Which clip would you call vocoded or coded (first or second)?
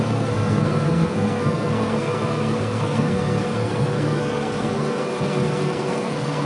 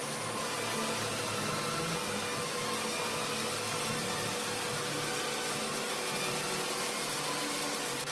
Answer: first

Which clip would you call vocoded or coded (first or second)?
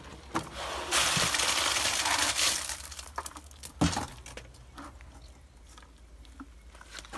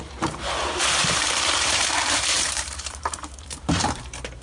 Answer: second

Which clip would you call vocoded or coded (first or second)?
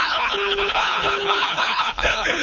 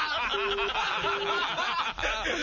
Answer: first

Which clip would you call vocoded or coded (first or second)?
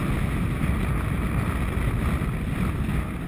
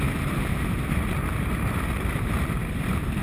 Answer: second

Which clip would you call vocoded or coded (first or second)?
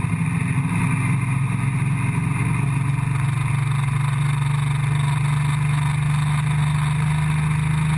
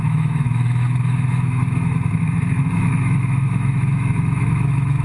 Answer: second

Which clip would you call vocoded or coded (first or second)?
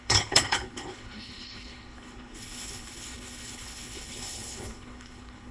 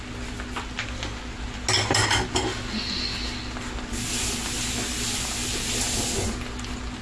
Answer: first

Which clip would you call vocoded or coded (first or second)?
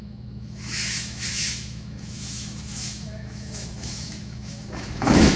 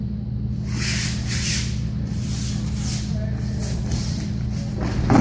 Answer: first